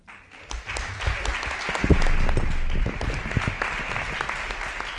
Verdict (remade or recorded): recorded